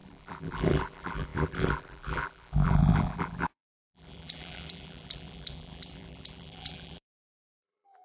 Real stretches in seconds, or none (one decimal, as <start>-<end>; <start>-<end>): none